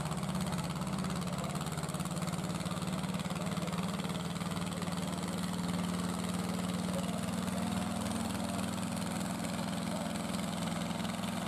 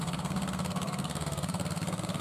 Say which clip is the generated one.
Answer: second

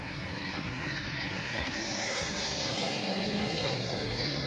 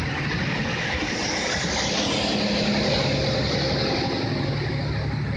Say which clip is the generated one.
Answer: first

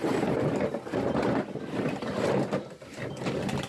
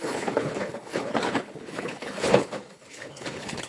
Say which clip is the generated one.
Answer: second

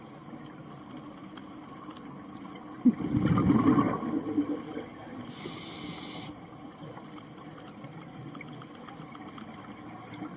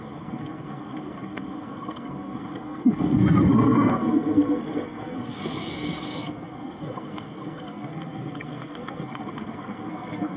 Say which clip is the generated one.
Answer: second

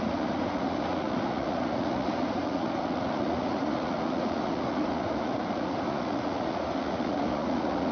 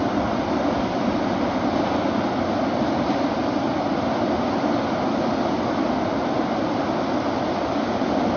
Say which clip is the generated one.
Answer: first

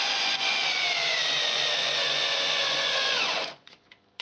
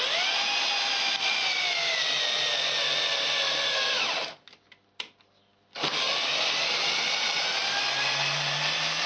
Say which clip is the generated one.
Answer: first